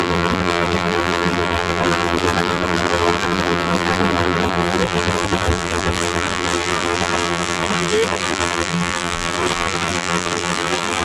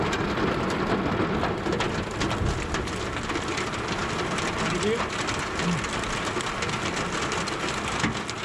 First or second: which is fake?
first